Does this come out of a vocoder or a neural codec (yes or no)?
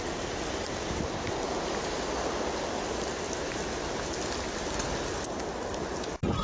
no